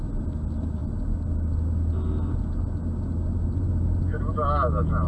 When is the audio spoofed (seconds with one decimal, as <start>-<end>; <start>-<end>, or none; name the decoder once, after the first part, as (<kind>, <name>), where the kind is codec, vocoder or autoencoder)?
none